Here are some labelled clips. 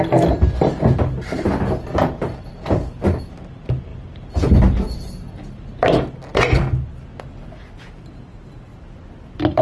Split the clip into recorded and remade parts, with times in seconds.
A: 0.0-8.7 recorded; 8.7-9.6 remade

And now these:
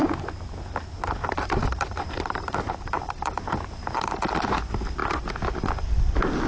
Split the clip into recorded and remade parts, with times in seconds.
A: 0.0-1.2 recorded; 1.2-4.1 remade; 4.1-5.0 recorded; 5.0-5.8 remade; 5.8-6.5 recorded

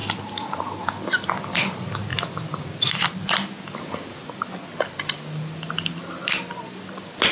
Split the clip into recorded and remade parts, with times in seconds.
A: 0.0-0.8 remade; 0.8-2.1 recorded; 2.1-3.1 remade; 3.1-7.3 recorded

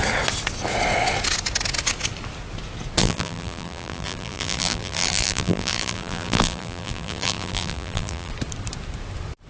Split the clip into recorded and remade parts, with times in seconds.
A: 0.0-3.0 recorded; 3.0-8.3 remade; 8.3-9.5 recorded

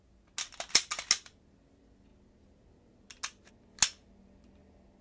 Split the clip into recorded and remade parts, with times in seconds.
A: 0.0-5.0 recorded

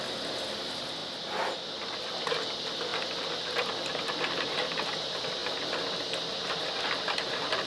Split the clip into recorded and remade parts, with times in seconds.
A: 0.0-7.7 recorded